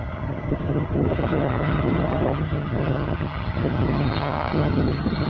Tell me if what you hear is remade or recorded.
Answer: remade